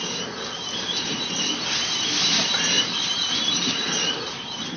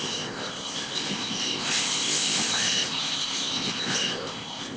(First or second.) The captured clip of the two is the first